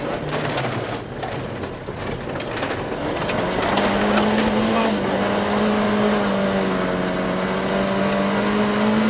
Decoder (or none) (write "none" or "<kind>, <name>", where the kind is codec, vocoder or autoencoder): none